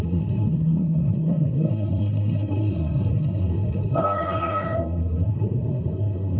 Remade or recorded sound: remade